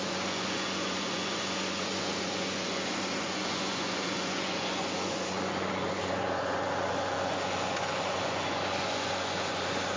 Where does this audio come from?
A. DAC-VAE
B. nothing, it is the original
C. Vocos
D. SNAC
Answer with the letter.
C